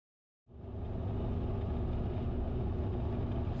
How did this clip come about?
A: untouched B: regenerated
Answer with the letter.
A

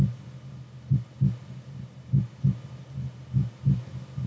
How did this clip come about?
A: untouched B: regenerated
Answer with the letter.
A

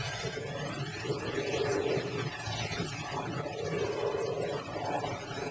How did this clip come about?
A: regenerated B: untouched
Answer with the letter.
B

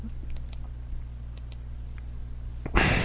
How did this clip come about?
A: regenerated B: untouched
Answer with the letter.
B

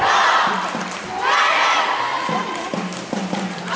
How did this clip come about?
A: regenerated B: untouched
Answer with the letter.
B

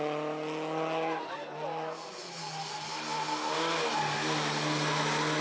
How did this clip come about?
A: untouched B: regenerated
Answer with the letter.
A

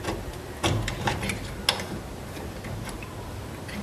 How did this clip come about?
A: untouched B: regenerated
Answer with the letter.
A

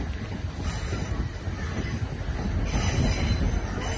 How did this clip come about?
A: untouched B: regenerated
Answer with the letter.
A